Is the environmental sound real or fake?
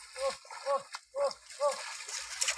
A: real